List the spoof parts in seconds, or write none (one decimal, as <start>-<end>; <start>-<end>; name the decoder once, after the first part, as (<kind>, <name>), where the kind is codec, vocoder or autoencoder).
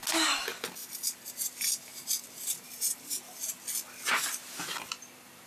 0.8-3.6 (vocoder, BigVGAN v2)